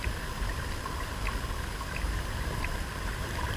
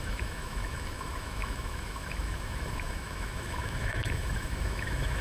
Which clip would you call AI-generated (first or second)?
second